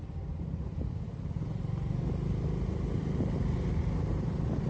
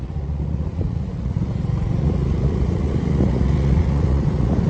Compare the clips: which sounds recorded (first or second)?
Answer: first